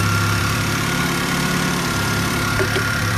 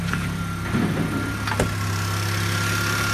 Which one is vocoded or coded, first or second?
first